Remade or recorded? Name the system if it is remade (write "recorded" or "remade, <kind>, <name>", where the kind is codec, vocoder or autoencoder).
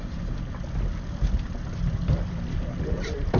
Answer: recorded